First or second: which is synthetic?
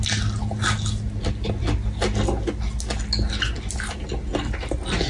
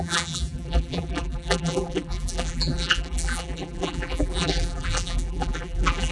second